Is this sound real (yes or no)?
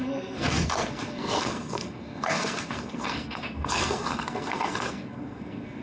no